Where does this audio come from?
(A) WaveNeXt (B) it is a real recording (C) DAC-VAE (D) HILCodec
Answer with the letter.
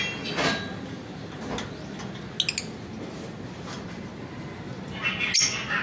B